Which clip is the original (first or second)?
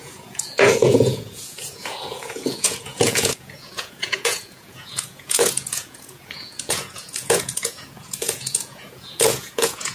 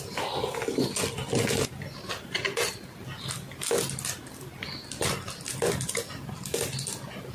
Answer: second